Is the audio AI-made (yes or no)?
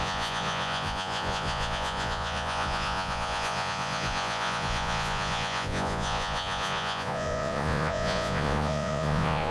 yes